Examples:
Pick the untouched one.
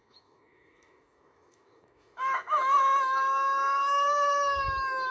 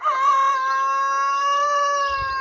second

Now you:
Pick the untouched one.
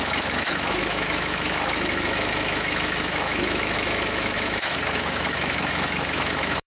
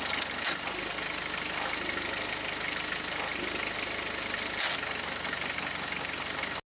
second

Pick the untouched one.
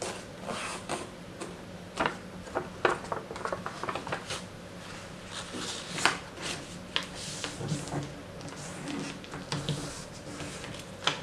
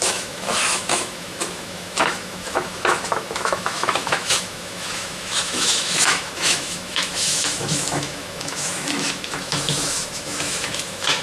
first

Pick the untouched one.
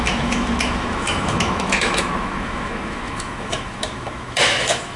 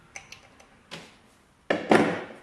second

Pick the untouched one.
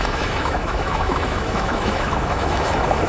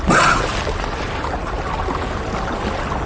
second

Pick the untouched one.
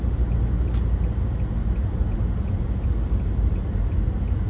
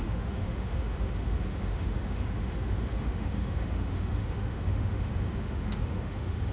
first